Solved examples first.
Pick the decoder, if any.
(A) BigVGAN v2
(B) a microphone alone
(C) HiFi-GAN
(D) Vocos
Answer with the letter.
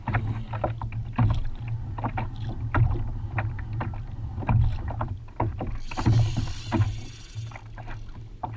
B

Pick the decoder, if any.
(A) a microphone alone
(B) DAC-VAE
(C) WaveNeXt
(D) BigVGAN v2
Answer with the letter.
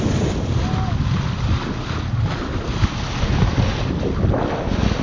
A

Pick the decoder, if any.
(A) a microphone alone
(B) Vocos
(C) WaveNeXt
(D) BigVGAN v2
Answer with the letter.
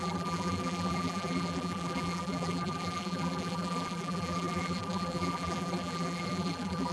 D